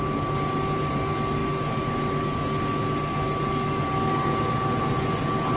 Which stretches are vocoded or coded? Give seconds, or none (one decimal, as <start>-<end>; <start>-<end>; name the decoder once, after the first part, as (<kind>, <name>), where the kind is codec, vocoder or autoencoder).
none